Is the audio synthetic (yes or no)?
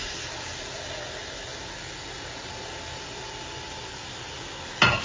no